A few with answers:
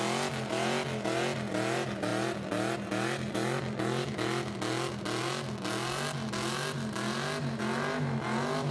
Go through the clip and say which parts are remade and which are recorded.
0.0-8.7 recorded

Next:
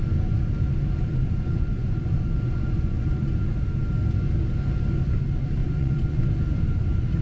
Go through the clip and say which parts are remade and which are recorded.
0.0-1.1 recorded; 1.1-3.2 remade; 3.2-5.6 recorded; 5.6-6.3 remade; 6.3-7.2 recorded

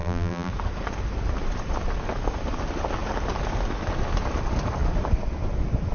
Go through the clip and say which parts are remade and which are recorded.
0.0-0.5 remade; 0.5-5.9 recorded

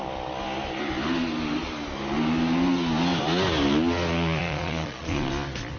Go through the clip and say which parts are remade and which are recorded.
0.0-4.4 recorded; 4.4-5.3 remade; 5.3-5.8 recorded

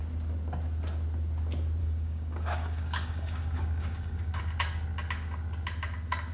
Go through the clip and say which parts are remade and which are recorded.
0.0-1.8 recorded; 1.8-4.4 remade; 4.4-6.3 recorded

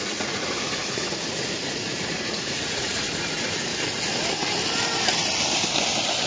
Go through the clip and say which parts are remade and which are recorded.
0.0-3.7 remade; 3.7-6.3 recorded